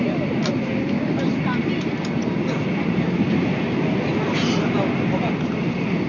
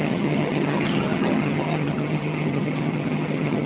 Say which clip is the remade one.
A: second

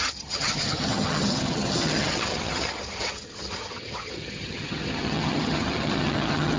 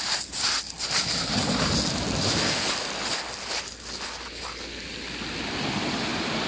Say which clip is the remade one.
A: first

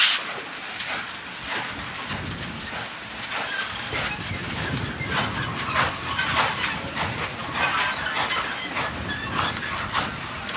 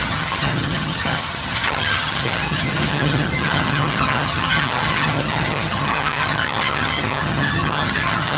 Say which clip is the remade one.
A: second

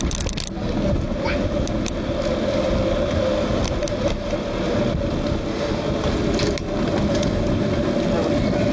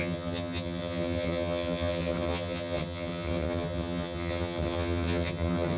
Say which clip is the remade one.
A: second